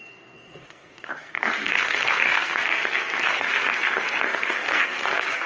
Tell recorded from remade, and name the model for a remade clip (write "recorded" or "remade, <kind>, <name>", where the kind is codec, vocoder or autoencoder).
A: remade, codec, SNAC